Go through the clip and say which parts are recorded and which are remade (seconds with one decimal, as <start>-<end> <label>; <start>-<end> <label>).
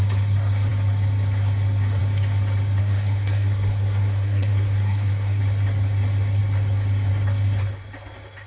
0.0-2.8 recorded; 2.8-5.4 remade; 5.4-8.5 recorded